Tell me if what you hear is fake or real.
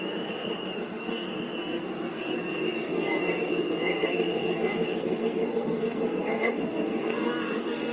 fake